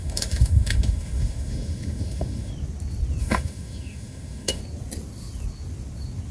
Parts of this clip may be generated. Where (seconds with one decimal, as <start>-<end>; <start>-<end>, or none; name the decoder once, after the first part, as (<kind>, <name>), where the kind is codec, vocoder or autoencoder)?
0.0-2.5 (autoencoder, DAC-VAE); 3.2-4.6